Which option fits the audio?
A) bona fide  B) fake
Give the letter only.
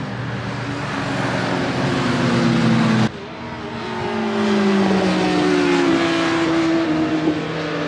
A